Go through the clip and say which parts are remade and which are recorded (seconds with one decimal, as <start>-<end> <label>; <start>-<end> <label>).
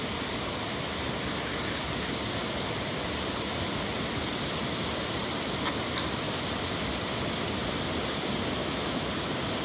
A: 0.0-8.6 recorded; 8.6-9.1 remade; 9.1-9.6 recorded